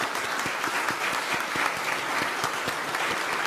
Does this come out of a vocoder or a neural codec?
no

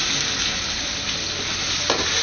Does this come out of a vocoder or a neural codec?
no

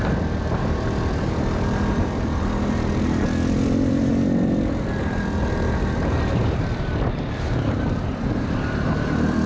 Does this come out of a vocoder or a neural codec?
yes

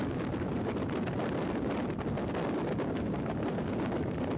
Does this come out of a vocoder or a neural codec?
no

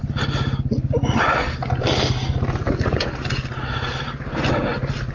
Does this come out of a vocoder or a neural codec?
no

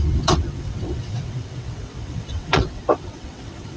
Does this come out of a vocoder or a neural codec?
yes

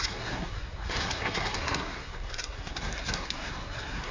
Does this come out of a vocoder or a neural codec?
yes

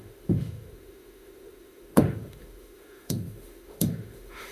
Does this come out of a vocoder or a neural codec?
yes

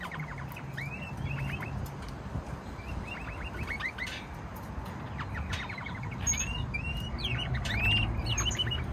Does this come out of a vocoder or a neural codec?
no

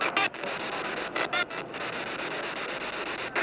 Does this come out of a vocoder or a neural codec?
no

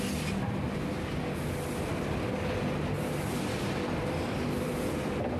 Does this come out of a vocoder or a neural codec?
no